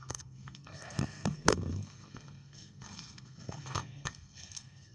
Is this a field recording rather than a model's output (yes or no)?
no